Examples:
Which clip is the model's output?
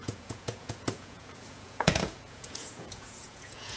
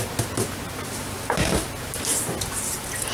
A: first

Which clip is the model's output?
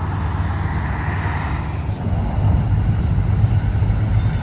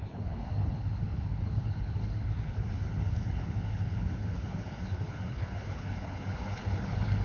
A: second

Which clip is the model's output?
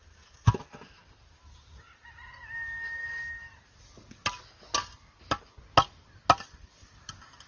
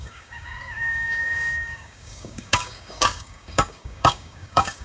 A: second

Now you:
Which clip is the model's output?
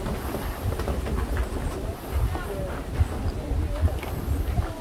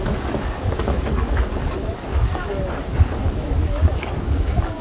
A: second